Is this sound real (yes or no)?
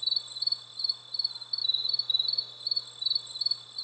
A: yes